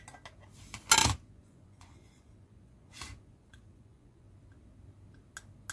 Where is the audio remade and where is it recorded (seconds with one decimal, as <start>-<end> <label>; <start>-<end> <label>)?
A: 0.0-1.0 recorded; 1.0-4.3 remade; 4.3-5.7 recorded